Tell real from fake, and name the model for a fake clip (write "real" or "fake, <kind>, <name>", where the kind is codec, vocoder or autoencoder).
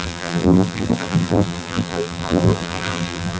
fake, vocoder, BigVGAN v2